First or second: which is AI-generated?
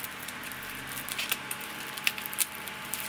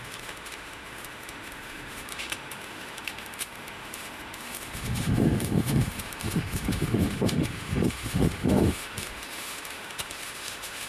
second